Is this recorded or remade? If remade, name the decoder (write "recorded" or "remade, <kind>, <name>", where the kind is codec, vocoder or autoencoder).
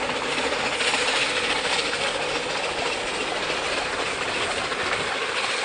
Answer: recorded